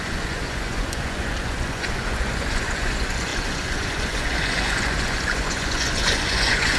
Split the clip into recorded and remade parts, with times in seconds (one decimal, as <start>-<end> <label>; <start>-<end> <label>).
0.0-6.8 remade